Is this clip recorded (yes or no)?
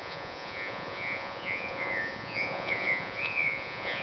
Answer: no